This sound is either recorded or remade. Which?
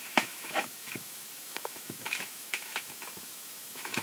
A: remade